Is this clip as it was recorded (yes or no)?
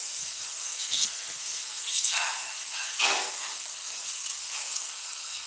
no